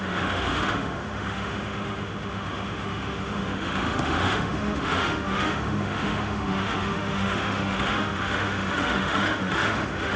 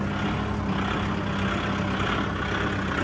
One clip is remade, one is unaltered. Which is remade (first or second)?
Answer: first